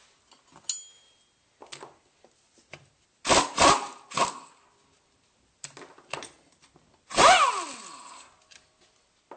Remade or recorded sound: recorded